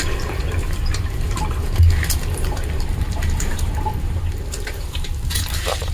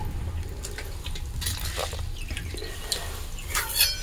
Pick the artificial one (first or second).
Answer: first